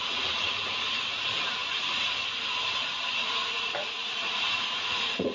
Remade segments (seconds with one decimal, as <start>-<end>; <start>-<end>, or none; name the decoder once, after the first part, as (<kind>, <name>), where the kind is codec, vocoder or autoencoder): 0.0-5.3 (vocoder, Vocos)